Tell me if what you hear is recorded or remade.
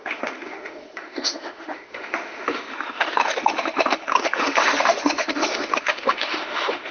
remade